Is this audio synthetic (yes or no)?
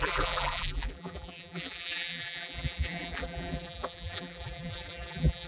yes